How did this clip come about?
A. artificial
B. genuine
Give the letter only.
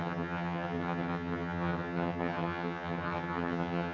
A